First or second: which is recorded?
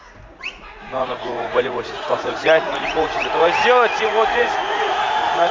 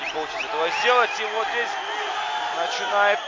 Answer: second